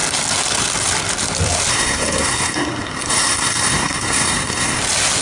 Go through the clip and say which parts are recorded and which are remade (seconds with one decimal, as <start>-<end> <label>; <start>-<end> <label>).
0.0-1.7 recorded; 1.7-4.8 remade; 4.8-5.2 recorded